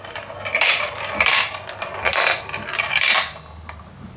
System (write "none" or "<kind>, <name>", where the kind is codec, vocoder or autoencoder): none